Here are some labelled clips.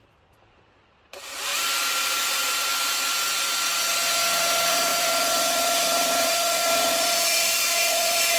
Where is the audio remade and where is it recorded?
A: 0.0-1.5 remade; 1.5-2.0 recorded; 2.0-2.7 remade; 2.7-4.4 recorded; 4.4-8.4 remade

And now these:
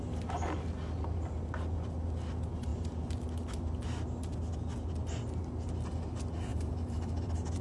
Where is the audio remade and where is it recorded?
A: 0.0-6.5 recorded; 6.5-7.1 remade; 7.1-7.6 recorded